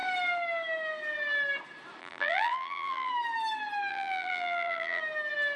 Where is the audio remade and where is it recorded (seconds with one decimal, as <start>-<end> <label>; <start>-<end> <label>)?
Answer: 0.0-2.0 recorded; 2.0-3.1 remade; 3.1-3.9 recorded; 3.9-5.0 remade; 5.0-5.6 recorded